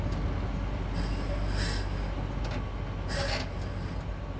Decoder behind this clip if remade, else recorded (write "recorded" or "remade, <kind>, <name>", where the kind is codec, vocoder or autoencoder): recorded